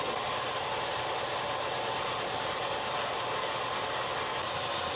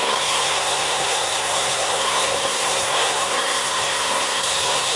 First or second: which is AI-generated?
second